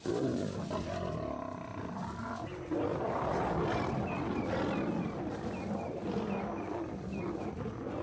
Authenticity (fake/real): real